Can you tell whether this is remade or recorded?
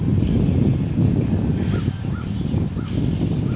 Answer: recorded